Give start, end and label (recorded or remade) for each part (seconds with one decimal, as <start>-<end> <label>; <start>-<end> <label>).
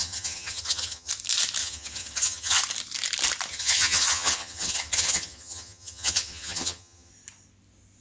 0.0-1.1 remade; 1.1-1.6 recorded; 1.6-2.6 remade; 2.6-3.5 recorded; 3.5-7.1 remade; 7.1-8.0 recorded